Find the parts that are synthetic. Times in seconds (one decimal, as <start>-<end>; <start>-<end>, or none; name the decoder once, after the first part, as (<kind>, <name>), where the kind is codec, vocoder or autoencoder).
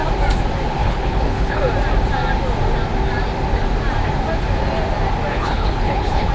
0.8-1.6 (codec, HILCodec); 5.3-6.3